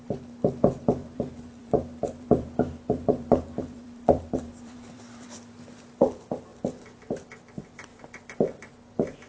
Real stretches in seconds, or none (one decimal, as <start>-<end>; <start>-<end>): 0.0-1.0; 5.5-9.3